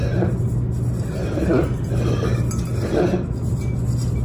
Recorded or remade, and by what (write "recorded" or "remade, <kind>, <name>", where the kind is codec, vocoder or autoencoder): recorded